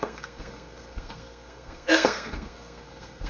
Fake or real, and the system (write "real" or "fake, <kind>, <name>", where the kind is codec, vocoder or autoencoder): fake, codec, SNAC